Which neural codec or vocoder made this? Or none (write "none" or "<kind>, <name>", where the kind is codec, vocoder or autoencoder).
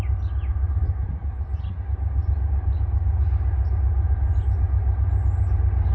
none